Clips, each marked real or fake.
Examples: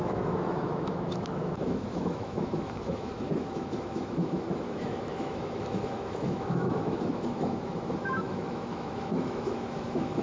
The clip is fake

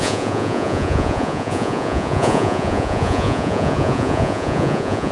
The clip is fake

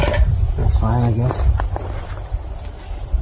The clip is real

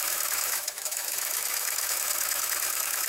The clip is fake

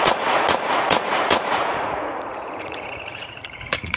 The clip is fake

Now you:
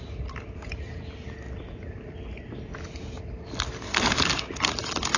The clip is real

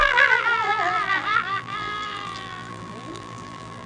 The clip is fake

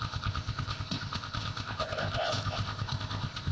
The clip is fake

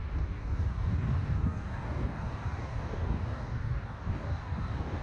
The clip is fake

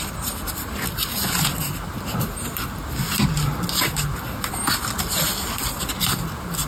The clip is real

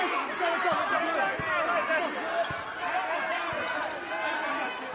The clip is real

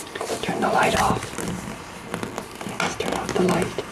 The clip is real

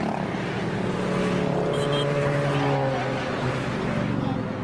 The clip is real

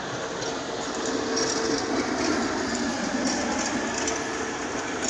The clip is real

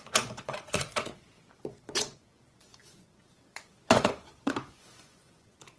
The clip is fake